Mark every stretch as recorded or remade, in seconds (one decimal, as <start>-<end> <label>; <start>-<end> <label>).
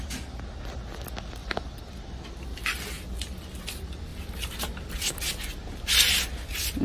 0.0-1.4 recorded; 1.4-2.9 remade; 2.9-4.1 recorded; 4.1-5.1 remade; 5.1-6.8 recorded